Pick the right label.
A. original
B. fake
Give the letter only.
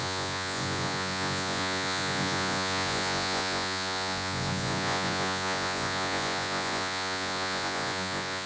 B